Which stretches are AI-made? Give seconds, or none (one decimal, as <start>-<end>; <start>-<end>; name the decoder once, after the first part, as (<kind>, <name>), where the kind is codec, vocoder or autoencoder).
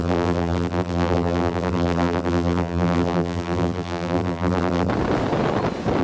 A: 0.0-4.9 (vocoder, BigVGAN v2)